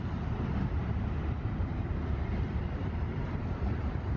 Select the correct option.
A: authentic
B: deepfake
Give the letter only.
B